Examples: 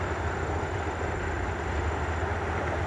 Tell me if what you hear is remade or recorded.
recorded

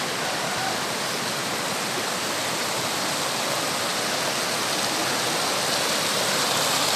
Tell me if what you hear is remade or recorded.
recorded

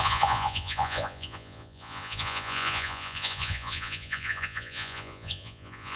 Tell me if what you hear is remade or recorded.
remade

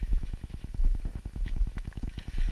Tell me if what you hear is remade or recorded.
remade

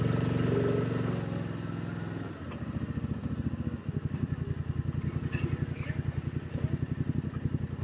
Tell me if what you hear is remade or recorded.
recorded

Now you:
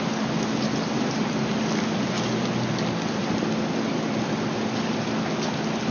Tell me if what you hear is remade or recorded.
recorded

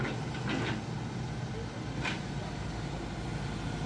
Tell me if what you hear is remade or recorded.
recorded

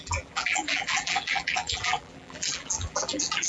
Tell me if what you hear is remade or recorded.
remade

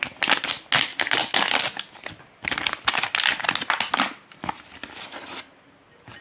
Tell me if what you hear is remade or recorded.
recorded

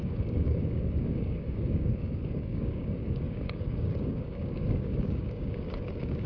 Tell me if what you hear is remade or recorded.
remade